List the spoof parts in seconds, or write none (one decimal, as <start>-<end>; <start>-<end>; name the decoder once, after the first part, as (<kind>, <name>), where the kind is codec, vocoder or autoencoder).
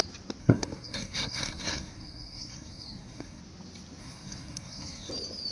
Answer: 0.4-3.4 (codec, SNAC); 4.0-5.1